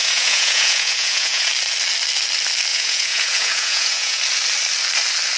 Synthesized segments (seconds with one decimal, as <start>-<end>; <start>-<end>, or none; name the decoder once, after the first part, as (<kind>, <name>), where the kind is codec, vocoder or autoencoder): 0.0-1.5 (vocoder, Vocos); 2.7-4.2